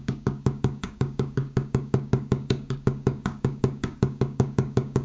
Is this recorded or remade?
remade